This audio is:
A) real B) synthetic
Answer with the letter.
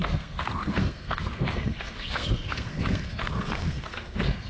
B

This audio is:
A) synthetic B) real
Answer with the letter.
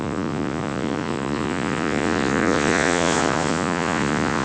A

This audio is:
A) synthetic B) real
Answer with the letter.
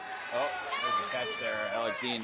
B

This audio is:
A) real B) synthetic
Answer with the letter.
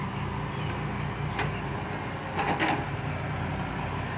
A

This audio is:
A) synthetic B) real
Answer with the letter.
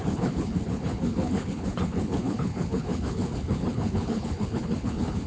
A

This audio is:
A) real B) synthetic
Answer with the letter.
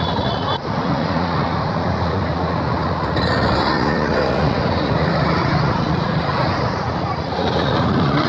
B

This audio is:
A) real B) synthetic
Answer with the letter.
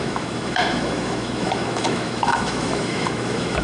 B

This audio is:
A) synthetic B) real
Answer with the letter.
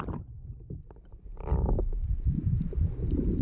B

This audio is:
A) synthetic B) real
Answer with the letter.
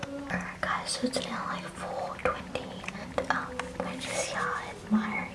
B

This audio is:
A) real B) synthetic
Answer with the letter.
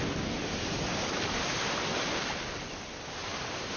A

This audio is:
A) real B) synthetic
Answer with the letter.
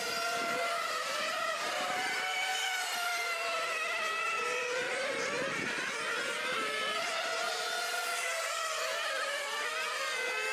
B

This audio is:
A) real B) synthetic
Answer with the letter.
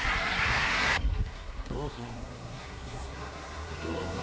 B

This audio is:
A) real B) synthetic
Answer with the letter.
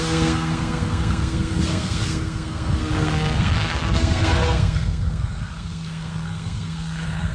B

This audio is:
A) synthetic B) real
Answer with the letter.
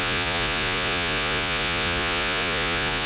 A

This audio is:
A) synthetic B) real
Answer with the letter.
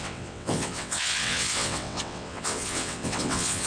A